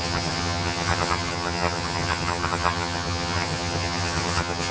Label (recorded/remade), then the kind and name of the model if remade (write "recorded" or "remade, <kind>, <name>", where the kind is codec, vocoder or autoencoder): remade, vocoder, HiFi-GAN